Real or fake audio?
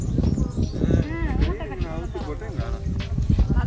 real